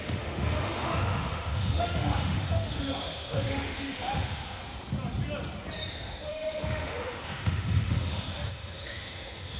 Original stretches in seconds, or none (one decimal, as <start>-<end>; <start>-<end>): 4.6-5.9